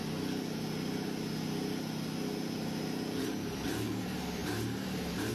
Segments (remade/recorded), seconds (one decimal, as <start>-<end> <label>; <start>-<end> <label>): 0.0-3.2 recorded; 3.2-5.3 remade